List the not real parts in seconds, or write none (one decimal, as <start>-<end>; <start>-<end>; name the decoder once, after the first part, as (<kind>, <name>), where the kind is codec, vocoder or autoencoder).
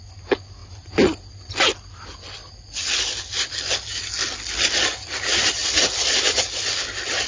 none